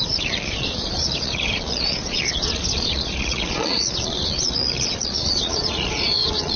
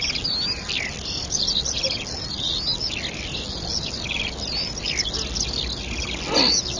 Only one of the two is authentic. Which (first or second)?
second